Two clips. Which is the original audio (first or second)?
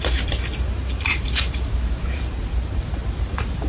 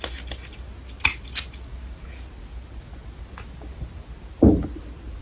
second